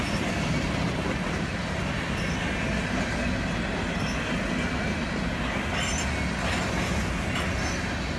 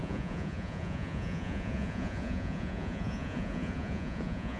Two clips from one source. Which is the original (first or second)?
first